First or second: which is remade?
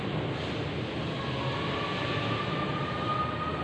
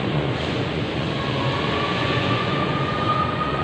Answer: second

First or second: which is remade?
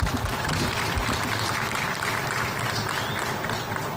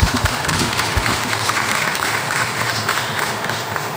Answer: second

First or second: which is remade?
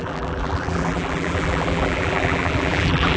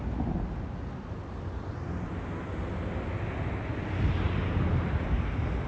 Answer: first